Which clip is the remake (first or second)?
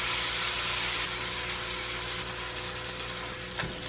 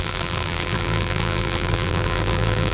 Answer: second